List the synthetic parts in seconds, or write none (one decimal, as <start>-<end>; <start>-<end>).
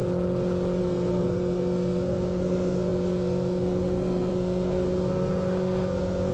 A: 0.8-6.3